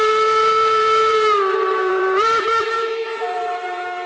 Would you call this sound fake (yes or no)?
yes